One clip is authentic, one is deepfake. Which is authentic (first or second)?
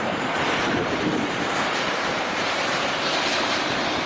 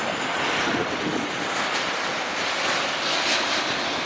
second